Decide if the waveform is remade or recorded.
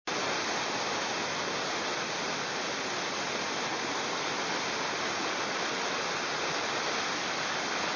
recorded